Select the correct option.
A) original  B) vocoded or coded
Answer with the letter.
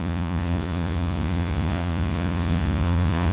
B